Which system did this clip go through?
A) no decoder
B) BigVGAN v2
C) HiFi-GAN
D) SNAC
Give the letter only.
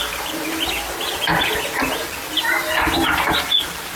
A